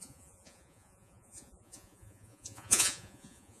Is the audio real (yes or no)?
no